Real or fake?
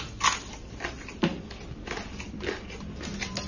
real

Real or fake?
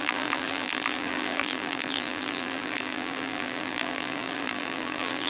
fake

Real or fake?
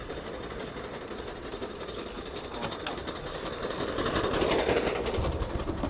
real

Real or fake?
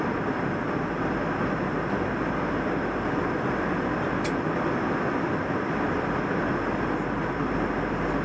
real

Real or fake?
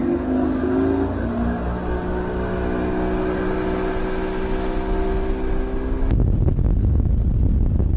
real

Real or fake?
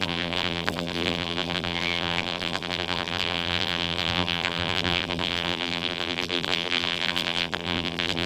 fake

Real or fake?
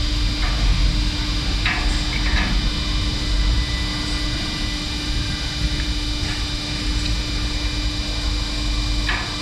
real